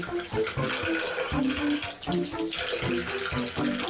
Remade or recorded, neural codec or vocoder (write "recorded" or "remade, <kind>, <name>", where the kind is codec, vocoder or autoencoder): recorded